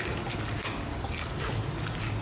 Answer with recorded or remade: recorded